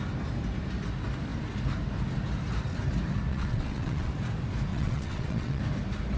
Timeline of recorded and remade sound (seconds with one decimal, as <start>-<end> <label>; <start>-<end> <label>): 0.0-3.3 recorded; 3.3-4.1 remade; 4.1-4.7 recorded; 4.7-5.6 remade; 5.6-6.2 recorded